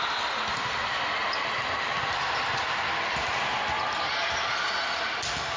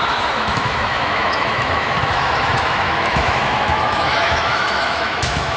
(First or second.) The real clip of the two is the first